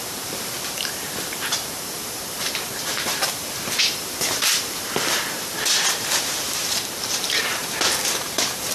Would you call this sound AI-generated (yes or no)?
yes